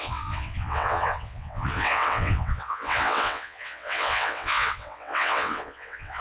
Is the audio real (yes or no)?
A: no